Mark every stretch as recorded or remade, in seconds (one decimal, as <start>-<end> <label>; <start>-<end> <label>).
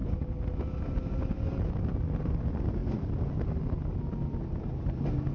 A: 0.0-5.3 recorded